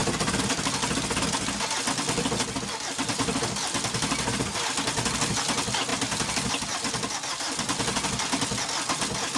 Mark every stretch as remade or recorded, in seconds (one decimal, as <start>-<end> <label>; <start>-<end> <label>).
0.0-5.9 recorded; 5.9-6.5 remade; 6.5-9.4 recorded